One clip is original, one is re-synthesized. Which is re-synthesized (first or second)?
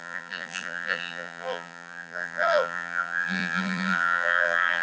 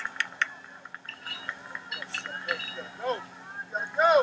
first